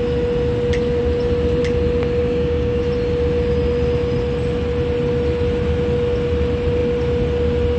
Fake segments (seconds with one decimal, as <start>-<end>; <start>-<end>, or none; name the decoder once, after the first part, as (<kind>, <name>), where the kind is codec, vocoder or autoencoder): 2.2-2.8 (codec, DAC)